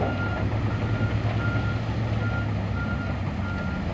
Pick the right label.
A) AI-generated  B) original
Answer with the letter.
B